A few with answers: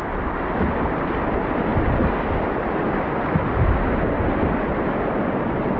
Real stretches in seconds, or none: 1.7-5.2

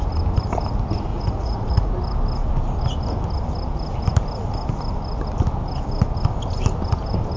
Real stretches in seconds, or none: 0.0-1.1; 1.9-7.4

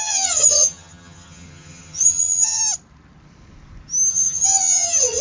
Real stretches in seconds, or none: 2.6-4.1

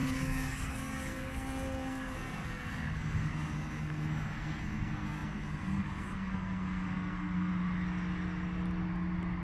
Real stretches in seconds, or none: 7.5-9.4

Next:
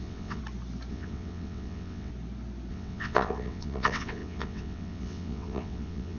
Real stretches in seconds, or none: 0.4-0.9; 2.1-2.7

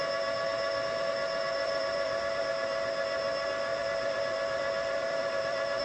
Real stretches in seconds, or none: 0.0-1.6; 2.4-3.7

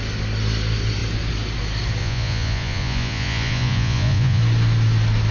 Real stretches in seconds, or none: 0.0-2.0; 4.4-5.3

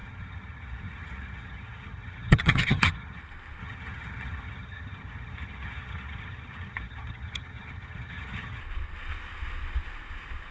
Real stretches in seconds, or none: 3.2-3.6; 8.6-10.5